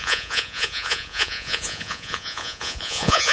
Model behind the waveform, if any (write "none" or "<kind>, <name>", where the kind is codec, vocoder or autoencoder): vocoder, Vocos